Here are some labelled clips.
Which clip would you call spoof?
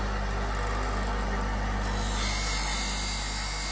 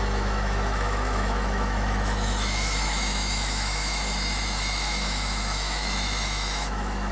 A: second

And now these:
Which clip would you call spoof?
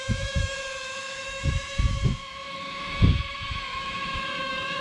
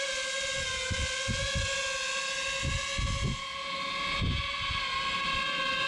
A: first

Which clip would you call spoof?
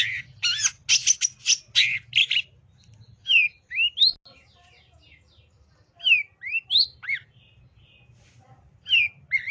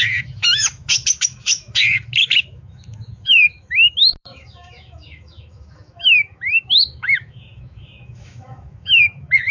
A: second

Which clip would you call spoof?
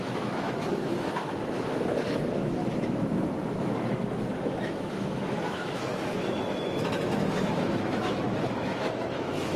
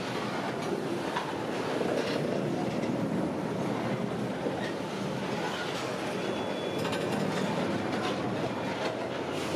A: first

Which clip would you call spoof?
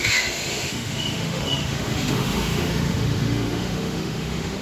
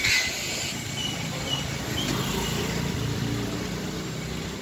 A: first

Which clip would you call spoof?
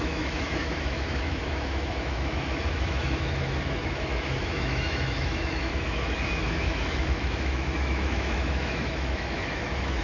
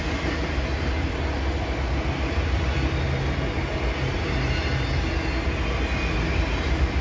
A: first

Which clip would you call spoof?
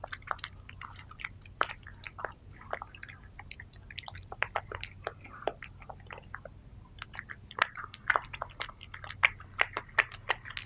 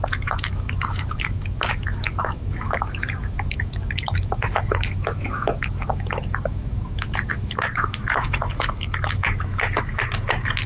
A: second